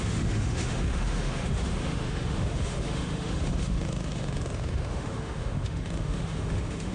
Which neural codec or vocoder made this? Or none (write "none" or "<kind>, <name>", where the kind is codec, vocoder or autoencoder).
autoencoder, DAC-VAE